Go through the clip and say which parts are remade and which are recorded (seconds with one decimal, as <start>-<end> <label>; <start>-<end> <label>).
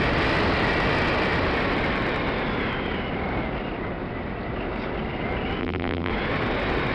0.0-5.6 recorded; 5.6-6.1 remade; 6.1-6.9 recorded